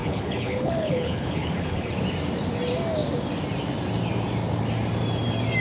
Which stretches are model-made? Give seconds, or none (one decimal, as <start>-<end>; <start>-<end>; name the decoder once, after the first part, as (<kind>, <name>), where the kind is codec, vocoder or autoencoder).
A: 0.0-1.9 (codec, HILCodec)